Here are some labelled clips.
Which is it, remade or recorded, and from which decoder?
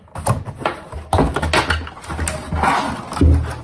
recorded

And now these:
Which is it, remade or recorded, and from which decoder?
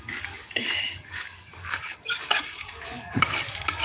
remade, codec, DAC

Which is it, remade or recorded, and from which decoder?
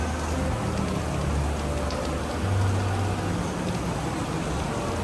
recorded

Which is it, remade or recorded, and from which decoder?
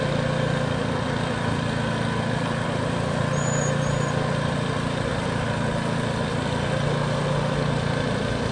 recorded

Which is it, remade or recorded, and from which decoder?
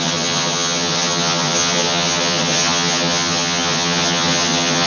remade, vocoder, HiFi-GAN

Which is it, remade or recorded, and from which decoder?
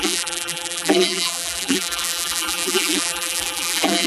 remade, vocoder, BigVGAN v2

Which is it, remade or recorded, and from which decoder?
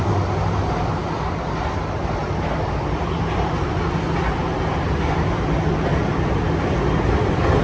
recorded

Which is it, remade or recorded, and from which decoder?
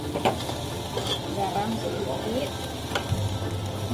recorded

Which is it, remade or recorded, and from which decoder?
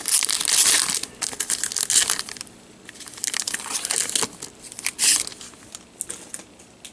recorded